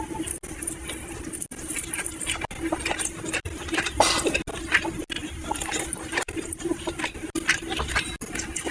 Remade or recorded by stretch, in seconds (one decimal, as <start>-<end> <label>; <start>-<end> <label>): 0.0-5.2 recorded; 5.2-6.9 remade; 6.9-8.7 recorded